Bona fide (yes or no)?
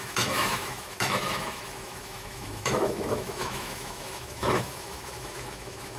no